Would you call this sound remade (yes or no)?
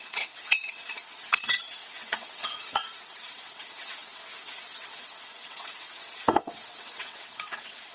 yes